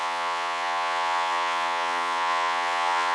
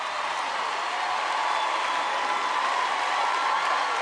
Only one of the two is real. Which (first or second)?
second